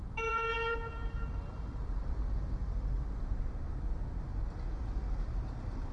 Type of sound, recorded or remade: remade